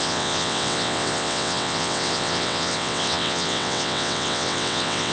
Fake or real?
fake